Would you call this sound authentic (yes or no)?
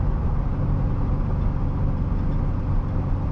yes